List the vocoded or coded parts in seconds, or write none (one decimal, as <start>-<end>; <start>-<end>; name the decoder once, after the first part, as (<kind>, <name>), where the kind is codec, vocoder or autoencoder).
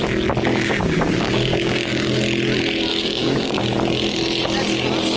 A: 0.5-2.1 (codec, DAC); 2.9-3.6